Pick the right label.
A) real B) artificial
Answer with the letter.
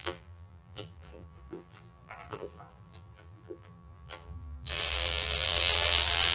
B